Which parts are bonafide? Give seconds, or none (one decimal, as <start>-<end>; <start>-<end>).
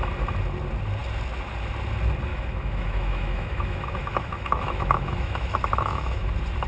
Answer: 0.0-2.3; 6.3-6.7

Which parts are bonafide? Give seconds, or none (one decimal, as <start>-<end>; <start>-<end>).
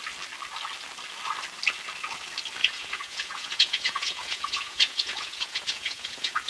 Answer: 0.0-2.6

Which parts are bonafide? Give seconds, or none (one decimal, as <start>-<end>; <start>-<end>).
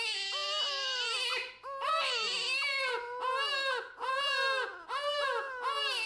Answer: 0.0-6.1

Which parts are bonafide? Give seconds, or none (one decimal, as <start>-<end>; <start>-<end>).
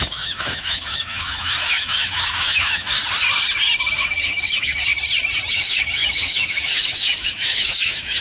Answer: 3.0-3.9; 4.9-5.5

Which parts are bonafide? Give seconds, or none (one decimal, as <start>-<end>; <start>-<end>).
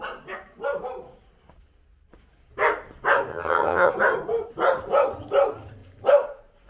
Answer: 0.0-3.3; 3.9-6.7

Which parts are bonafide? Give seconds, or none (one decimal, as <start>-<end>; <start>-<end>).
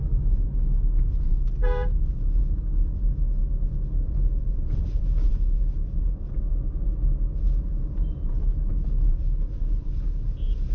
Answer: 0.7-10.7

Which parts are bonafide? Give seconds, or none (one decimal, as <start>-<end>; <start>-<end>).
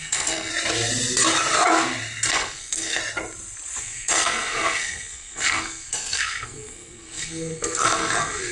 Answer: 0.5-2.3; 3.0-3.8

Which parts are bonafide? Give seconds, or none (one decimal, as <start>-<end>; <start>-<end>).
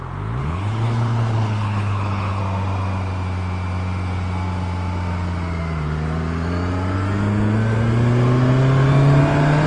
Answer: 0.0-0.4; 2.4-9.7